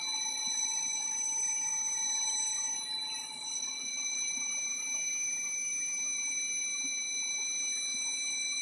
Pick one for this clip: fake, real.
fake